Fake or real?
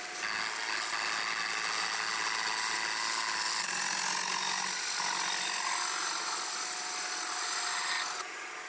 real